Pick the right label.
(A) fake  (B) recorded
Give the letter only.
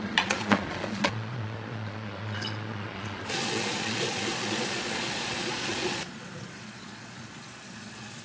A